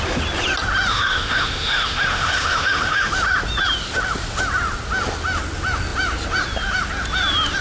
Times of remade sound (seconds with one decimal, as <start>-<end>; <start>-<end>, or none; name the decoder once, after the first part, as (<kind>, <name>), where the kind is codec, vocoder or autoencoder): 0.9-3.1 (autoencoder, DAC-VAE)